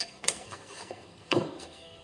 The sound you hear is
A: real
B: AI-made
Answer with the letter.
B